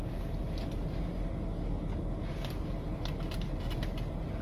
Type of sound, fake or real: real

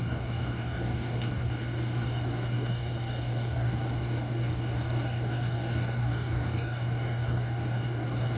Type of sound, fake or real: fake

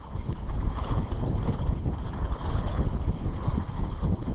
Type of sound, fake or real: fake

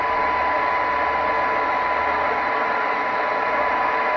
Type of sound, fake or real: real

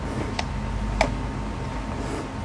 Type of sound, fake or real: real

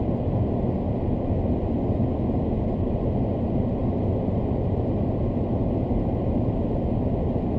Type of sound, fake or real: real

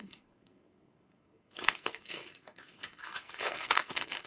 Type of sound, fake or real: fake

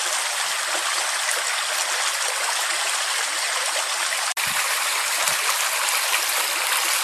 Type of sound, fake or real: real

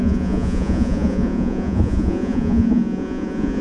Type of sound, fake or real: fake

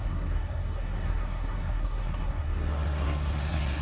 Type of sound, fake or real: fake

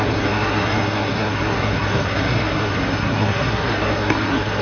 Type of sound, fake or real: fake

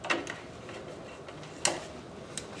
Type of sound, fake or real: real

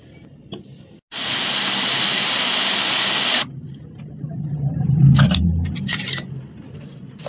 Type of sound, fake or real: real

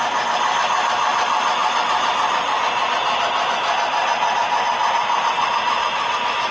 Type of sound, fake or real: real